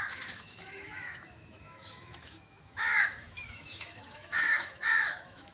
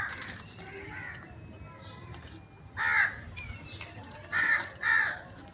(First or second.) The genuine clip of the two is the second